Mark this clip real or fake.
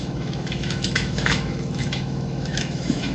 fake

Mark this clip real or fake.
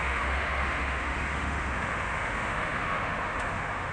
fake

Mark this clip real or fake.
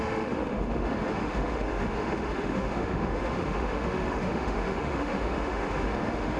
fake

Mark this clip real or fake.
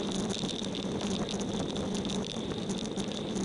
real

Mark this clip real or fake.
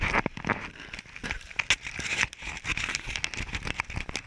real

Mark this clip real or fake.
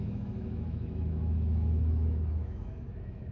fake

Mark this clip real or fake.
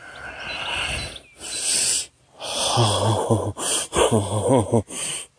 real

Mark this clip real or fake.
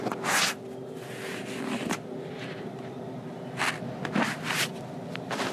real